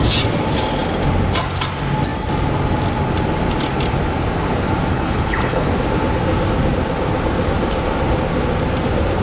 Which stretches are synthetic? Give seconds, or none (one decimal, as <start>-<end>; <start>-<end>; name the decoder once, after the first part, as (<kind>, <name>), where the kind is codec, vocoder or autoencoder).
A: 4.9-5.7 (codec, HILCodec)